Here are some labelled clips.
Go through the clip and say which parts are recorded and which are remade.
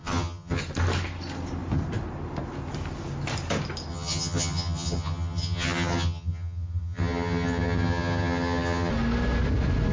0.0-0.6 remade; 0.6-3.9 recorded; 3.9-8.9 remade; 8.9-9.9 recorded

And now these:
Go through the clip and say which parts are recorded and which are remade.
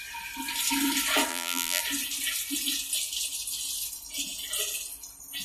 0.0-1.3 recorded; 1.3-1.8 remade; 1.8-5.4 recorded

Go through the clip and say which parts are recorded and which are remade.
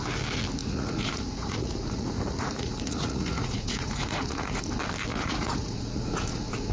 0.0-0.6 recorded; 0.6-4.6 remade; 4.6-5.1 recorded; 5.1-6.7 remade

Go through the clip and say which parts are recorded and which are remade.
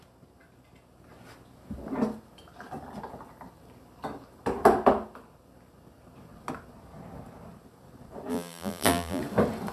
0.0-8.3 recorded; 8.3-9.2 remade; 9.2-9.7 recorded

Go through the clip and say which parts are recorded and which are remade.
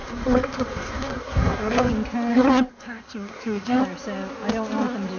0.0-1.9 remade; 1.9-2.3 recorded; 2.3-3.8 remade; 3.8-5.2 recorded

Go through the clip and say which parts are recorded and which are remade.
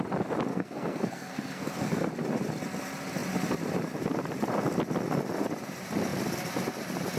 0.0-0.5 recorded; 0.5-2.1 remade; 2.1-7.2 recorded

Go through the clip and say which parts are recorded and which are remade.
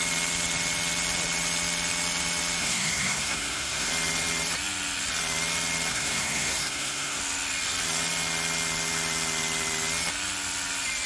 0.0-2.6 recorded; 2.6-3.9 remade; 3.9-5.9 recorded; 5.9-7.2 remade; 7.2-11.1 recorded